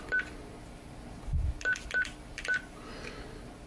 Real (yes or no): yes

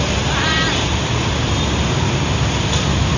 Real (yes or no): yes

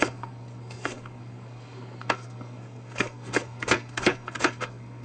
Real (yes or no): no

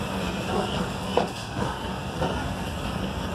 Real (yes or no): no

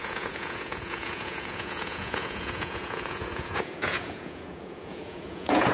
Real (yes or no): no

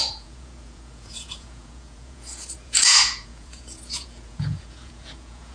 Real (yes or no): no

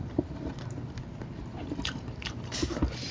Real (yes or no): no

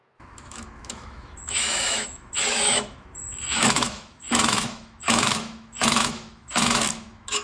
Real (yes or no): no